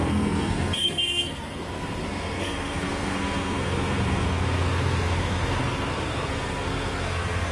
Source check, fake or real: fake